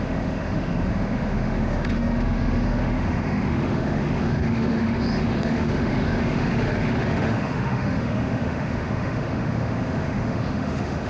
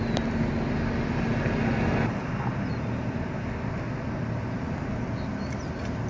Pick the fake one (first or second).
first